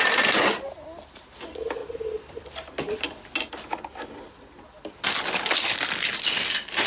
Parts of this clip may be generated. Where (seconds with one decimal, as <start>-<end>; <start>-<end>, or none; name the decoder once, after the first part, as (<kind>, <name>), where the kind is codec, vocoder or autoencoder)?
none

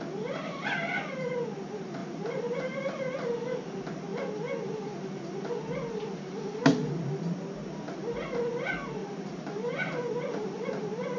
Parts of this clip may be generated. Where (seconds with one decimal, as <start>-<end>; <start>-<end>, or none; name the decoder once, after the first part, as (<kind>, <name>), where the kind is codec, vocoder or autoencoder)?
2.0-3.0 (vocoder, BigVGAN v2); 9.0-11.2

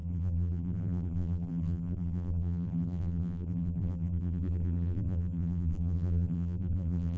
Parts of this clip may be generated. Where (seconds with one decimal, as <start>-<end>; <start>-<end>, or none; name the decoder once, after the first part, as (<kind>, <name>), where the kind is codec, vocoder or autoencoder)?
0.0-7.2 (vocoder, BigVGAN v2)

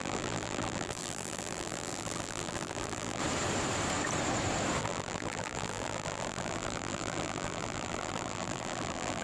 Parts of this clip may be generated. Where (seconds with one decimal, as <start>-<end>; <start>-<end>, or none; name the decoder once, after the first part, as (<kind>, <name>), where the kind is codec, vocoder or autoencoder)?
0.0-3.2 (vocoder, BigVGAN v2); 4.8-9.2

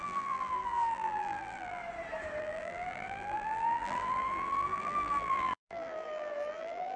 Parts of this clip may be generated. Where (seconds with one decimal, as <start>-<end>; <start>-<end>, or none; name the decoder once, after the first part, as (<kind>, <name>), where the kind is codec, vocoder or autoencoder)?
0.0-1.8 (vocoder, BigVGAN v2); 2.4-7.0

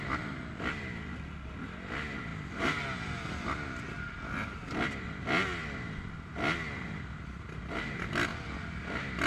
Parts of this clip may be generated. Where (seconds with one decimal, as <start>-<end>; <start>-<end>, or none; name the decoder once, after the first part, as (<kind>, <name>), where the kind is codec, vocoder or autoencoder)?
none